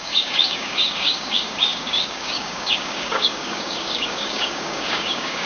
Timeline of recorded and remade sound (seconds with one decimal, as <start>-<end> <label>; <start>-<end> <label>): 0.0-5.5 remade